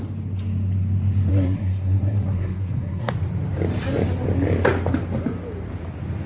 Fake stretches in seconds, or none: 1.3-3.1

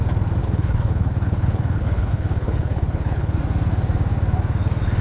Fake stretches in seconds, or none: 0.4-3.4

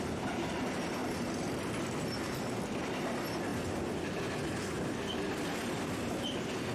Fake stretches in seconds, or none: 1.0-1.6

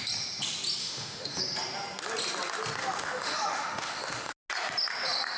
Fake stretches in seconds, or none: 0.8-1.4; 2.8-4.3

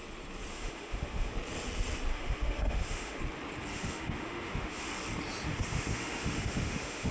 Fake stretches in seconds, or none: 0.5-1.3; 2.1-3.2; 3.7-4.9; 5.5-7.1

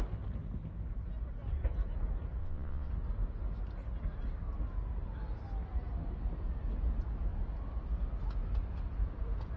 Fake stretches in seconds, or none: 2.4-2.9

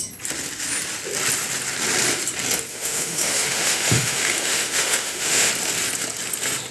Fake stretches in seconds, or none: 2.7-5.5